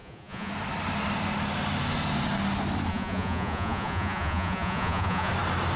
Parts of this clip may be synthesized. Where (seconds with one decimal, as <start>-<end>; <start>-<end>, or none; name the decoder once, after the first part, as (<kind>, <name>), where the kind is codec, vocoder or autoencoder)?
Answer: 0.0-0.5 (vocoder, Vocos); 2.9-5.3